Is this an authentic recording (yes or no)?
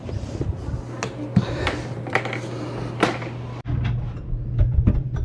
yes